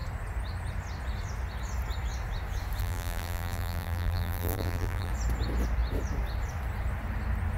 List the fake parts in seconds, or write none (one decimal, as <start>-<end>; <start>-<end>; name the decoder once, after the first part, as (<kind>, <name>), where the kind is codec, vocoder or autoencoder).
2.8-5.1 (vocoder, BigVGAN v2)